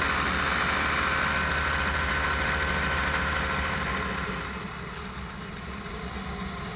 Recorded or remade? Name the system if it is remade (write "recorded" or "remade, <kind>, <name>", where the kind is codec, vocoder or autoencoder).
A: recorded